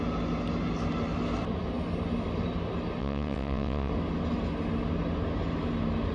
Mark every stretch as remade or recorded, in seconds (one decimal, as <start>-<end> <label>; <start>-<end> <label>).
0.0-3.0 recorded; 3.0-3.9 remade; 3.9-6.1 recorded